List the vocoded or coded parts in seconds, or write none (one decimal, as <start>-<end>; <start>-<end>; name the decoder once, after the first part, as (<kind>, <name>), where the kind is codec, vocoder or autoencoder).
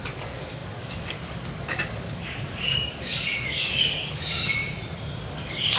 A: 0.0-4.6 (codec, DAC); 5.3-5.8